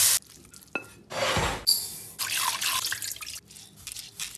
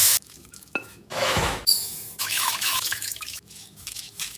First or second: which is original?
first